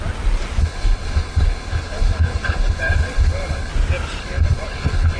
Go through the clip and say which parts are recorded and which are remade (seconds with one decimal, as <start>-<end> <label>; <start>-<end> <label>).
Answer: 0.0-0.6 recorded; 0.6-3.7 remade; 3.7-4.2 recorded; 4.2-5.2 remade